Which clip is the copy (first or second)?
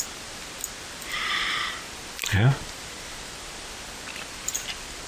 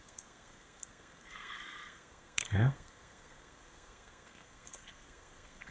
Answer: second